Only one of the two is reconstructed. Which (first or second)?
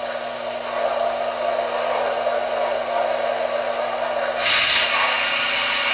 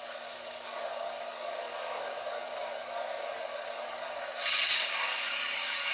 second